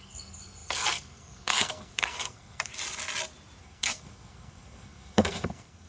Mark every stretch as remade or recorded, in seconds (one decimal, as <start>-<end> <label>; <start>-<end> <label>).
0.0-2.7 remade; 2.7-3.6 recorded; 3.6-5.9 remade